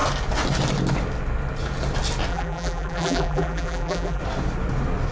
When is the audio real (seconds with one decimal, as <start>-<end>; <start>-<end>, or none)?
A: 0.0-2.3; 4.2-5.1